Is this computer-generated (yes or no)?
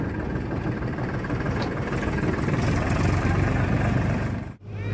yes